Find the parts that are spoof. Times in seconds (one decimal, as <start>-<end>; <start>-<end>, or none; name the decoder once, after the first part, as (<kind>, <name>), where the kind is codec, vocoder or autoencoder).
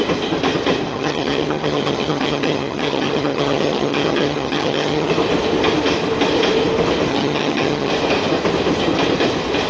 0.9-5.1 (vocoder, HiFi-GAN); 7.1-7.9